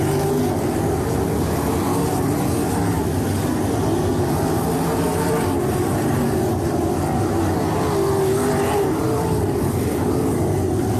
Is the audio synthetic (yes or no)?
no